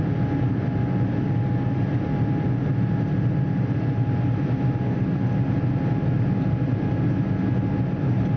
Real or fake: real